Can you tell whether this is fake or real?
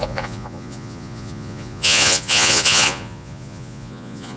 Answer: fake